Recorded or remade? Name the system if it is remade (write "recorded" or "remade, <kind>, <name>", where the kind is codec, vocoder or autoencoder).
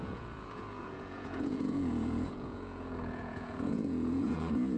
remade, vocoder, Vocos